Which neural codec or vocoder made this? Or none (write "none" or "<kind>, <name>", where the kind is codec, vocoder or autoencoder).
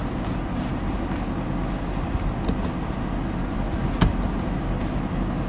none